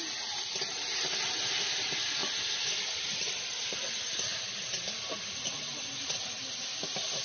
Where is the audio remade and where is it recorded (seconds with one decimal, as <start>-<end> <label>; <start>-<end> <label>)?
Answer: 0.0-7.2 recorded